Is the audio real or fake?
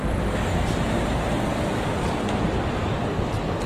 real